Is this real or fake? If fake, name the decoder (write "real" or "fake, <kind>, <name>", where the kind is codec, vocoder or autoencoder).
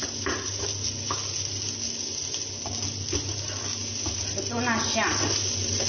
real